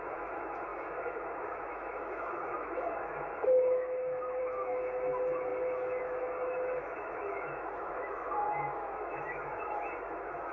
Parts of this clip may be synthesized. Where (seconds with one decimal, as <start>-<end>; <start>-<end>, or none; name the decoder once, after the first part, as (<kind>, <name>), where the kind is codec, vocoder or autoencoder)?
0.0-10.5 (autoencoder, DAC-VAE)